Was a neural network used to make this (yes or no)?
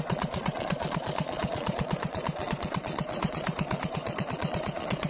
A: yes